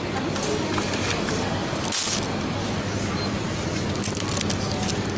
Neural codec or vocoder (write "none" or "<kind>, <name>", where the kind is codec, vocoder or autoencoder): none